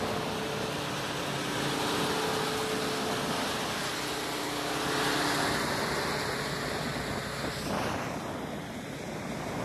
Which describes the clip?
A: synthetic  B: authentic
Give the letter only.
B